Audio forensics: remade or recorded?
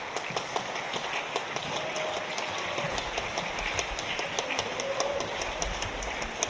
recorded